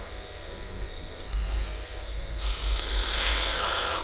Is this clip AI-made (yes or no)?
yes